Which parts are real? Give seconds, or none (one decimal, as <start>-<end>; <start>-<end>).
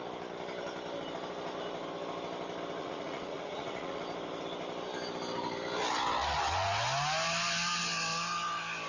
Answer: 0.0-2.8; 4.0-8.9